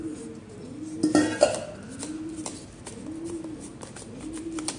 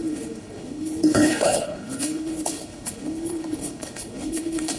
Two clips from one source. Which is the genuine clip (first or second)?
first